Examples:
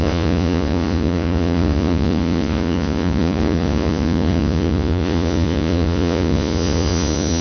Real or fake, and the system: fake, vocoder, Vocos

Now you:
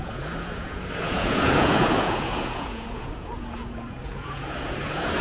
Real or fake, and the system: fake, vocoder, Vocos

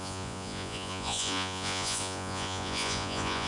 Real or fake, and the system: fake, vocoder, Vocos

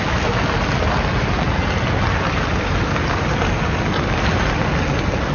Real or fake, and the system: real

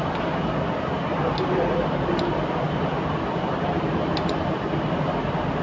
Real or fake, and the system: real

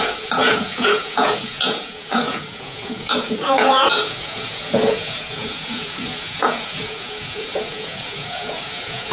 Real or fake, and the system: fake, vocoder, Vocos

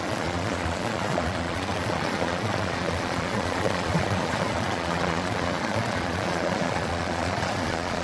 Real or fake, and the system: fake, vocoder, Vocos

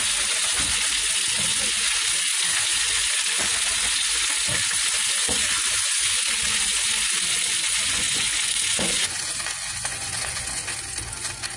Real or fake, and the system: fake, vocoder, Vocos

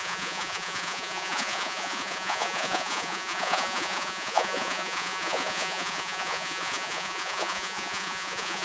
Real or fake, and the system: fake, vocoder, Vocos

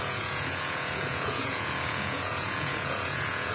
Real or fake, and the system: fake, vocoder, Vocos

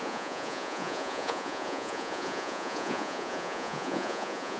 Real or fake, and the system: fake, vocoder, Vocos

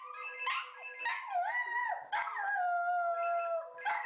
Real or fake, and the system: real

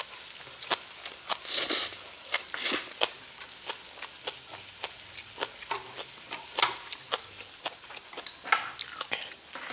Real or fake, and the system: real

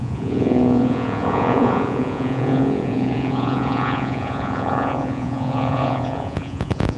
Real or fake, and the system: fake, vocoder, Vocos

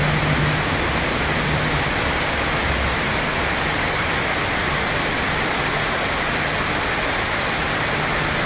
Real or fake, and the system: real